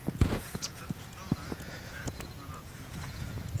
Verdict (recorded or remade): remade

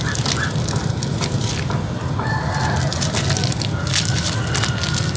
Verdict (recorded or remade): recorded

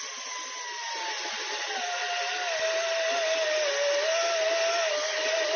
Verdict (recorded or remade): recorded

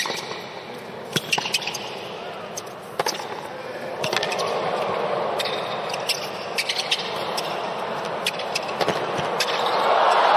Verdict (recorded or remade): recorded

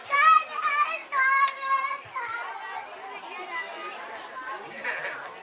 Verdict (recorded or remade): recorded